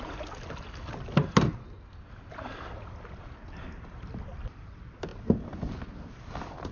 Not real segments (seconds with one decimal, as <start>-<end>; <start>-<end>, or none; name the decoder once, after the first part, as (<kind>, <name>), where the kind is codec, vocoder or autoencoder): none